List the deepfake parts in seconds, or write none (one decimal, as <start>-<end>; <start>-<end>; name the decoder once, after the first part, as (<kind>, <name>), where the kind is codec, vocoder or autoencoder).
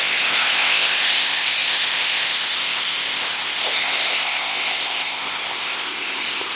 0.0-6.6 (codec, ZipCodec)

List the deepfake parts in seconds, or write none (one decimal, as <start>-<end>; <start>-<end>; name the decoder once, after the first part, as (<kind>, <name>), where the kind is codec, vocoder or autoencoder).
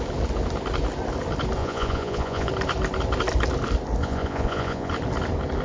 1.6-2.5 (vocoder, Vocos); 4.0-4.9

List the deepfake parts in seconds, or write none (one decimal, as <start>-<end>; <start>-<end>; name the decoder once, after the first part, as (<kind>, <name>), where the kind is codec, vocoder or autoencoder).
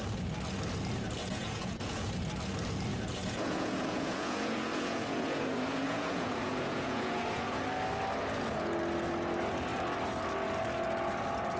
1.2-2.1 (vocoder, Vocos); 2.9-7.6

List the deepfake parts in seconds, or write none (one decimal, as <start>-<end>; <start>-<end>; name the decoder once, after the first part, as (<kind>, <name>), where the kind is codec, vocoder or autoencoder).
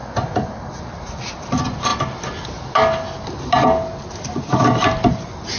none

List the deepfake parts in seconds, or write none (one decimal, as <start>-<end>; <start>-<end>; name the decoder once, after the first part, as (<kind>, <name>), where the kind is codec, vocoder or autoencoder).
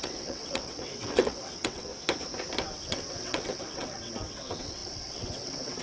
0.0-1.9 (vocoder, WaveNeXt); 2.7-5.8